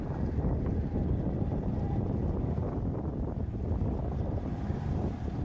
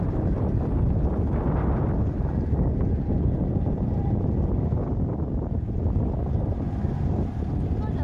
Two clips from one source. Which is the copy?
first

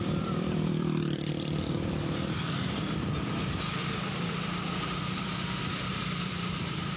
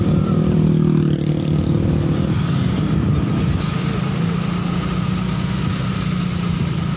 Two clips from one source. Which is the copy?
first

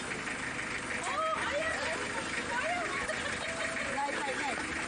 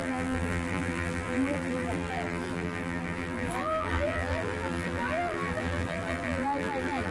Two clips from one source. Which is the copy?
second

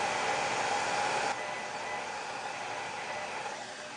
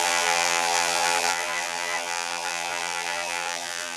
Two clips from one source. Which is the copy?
second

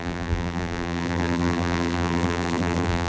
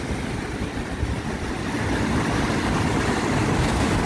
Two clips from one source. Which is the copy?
first